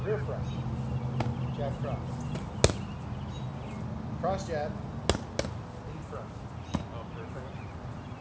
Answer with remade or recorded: recorded